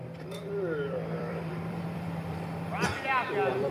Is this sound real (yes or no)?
no